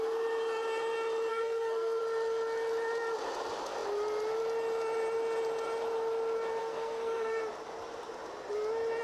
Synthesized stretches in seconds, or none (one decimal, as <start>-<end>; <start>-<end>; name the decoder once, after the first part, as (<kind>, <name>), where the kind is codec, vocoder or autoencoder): 1.3-2.0 (codec, SNAC); 6.6-7.4